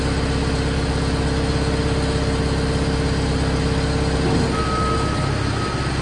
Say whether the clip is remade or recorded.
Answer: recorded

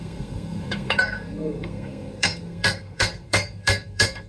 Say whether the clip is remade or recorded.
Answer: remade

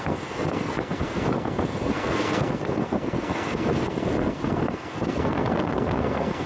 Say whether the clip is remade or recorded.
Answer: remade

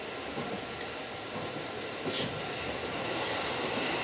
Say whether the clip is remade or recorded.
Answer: recorded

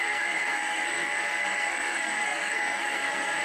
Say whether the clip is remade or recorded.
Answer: remade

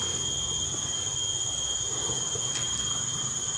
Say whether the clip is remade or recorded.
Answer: recorded